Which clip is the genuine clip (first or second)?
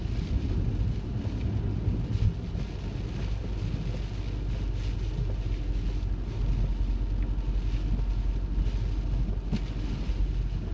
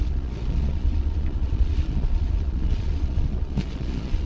first